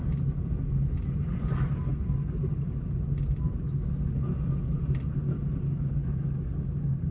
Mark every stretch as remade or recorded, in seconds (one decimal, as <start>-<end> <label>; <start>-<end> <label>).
0.0-7.1 recorded

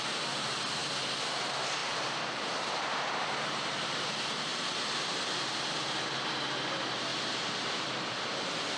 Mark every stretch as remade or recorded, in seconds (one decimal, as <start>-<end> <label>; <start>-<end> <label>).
0.0-7.1 recorded; 7.1-7.9 remade; 7.9-8.8 recorded

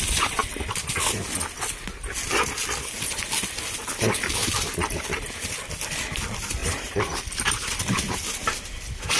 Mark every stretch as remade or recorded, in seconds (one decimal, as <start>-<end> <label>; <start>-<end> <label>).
0.0-6.6 recorded; 6.6-7.1 remade; 7.1-9.2 recorded

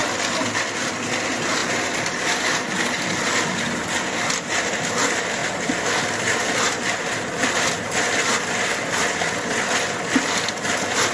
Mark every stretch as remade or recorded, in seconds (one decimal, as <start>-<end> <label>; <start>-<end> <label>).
0.0-11.1 recorded

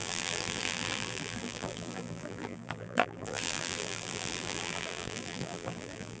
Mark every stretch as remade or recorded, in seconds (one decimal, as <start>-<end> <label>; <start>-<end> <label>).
0.0-6.2 remade

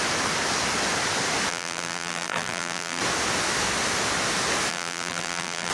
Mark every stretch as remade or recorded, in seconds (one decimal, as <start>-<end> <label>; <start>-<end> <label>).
0.0-1.5 recorded; 1.5-3.0 remade; 3.0-4.7 recorded; 4.7-5.7 remade